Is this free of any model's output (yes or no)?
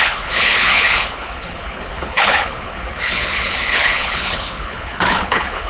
no